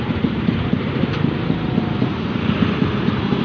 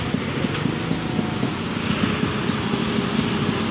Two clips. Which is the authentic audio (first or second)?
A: second